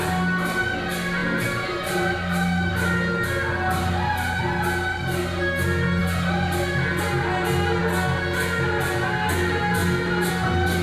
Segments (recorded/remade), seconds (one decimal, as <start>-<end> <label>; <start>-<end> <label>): 0.0-10.8 recorded